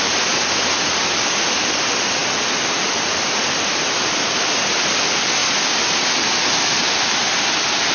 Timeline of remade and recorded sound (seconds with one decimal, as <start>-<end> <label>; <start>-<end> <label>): 0.0-7.9 recorded